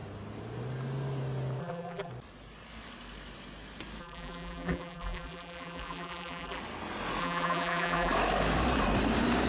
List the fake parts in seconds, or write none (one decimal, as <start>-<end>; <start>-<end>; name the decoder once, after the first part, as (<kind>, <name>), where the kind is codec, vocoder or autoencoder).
1.6-2.1 (vocoder, BigVGAN v2); 4.0-6.6; 7.2-8.1